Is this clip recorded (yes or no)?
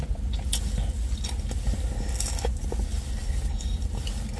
yes